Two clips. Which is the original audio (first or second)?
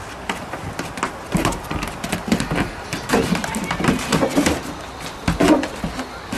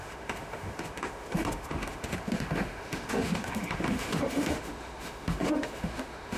first